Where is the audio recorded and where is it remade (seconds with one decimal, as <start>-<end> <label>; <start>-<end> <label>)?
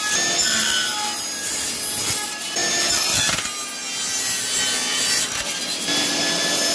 0.0-6.7 recorded